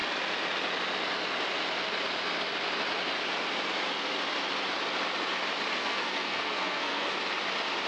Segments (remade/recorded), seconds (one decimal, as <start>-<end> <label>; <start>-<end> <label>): 0.0-5.8 recorded; 5.8-7.1 remade; 7.1-7.9 recorded